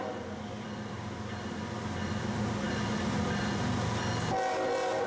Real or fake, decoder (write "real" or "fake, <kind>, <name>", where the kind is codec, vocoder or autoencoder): real